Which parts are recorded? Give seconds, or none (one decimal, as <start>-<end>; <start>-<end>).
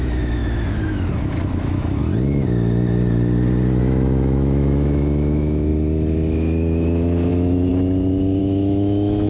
0.4-1.6; 2.0-3.8; 5.7-7.3; 7.7-8.4